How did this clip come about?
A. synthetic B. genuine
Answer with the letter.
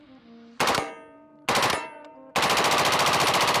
B